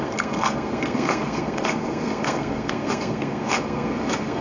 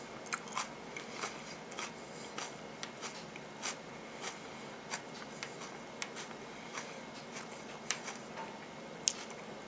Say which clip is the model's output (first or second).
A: first